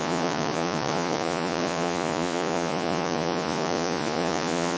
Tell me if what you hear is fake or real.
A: fake